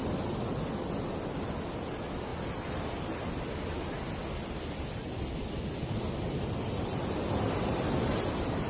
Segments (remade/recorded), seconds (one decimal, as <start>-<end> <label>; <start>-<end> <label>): 0.0-2.3 recorded; 2.3-2.8 remade; 2.8-8.7 recorded

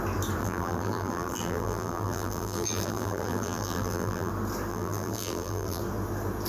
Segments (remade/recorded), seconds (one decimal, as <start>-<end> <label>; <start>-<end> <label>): 0.0-0.4 recorded; 0.4-4.3 remade; 4.3-4.7 recorded; 4.7-5.8 remade; 5.8-6.5 recorded

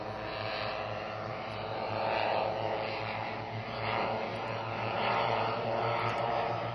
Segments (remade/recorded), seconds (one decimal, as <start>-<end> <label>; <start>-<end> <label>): 0.0-1.3 recorded; 1.3-1.9 remade; 1.9-4.3 recorded; 4.3-6.7 remade